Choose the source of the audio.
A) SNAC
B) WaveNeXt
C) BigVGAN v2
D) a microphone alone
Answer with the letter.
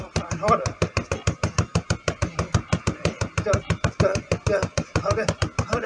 D